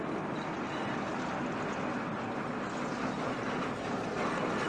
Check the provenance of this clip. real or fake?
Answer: real